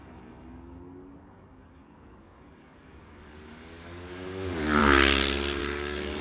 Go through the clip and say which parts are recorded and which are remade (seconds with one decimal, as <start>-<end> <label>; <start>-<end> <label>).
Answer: 0.0-4.8 remade; 4.8-5.6 recorded; 5.6-6.2 remade